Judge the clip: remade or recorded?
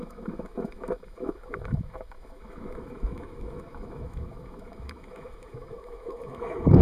remade